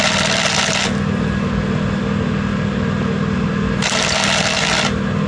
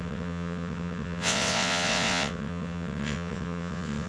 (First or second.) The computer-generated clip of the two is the second